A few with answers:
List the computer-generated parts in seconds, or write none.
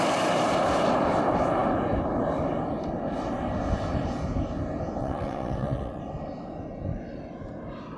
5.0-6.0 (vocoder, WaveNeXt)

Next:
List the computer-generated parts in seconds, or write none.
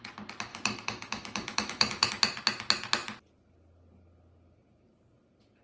0.5-2.1 (autoencoder, DAC-VAE)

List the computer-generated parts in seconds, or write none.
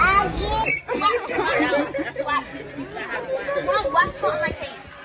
none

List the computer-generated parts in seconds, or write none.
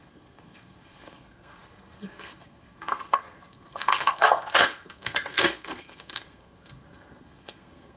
0.0-8.0 (codec, SNAC)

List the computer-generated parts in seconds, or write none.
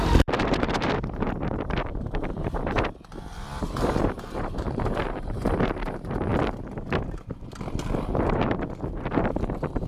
0.0-6.3 (vocoder, BigVGAN v2); 8.2-9.9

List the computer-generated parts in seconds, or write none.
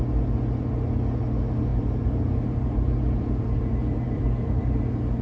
1.7-4.8 (vocoder, BigVGAN v2)